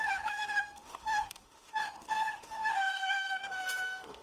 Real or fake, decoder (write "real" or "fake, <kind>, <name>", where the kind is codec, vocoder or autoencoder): fake, autoencoder, DAC-VAE